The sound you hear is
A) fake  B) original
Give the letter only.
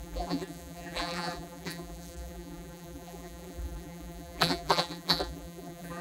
A